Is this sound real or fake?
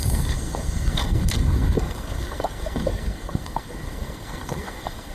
fake